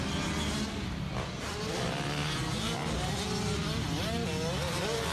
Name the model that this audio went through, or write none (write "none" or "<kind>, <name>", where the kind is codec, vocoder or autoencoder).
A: none